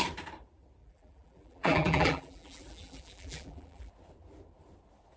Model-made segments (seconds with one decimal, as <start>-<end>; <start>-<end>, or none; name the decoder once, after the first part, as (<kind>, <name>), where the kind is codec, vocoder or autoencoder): 0.8-3.9 (vocoder, BigVGAN v2)